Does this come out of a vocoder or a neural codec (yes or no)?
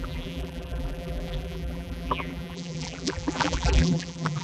yes